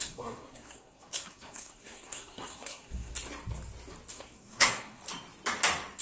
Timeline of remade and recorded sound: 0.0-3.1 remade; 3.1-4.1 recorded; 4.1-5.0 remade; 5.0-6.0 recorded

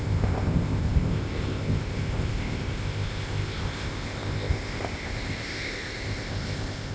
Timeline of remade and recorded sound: 0.0-6.9 remade

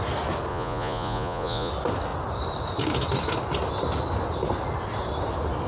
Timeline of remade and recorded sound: 0.0-0.5 recorded; 0.5-1.7 remade; 1.7-5.7 recorded